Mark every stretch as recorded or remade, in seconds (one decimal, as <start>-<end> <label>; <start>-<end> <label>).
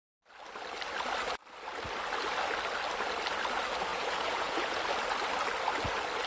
0.0-3.9 recorded; 3.9-4.8 remade; 4.8-6.3 recorded